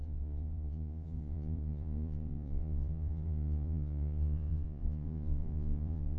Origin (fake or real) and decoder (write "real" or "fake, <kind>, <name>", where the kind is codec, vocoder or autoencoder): fake, vocoder, Vocos